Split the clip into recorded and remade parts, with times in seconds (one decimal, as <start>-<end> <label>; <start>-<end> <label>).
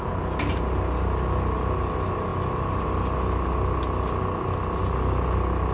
0.0-5.7 recorded